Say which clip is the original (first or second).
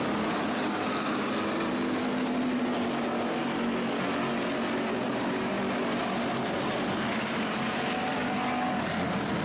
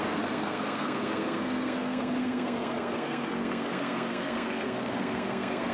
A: first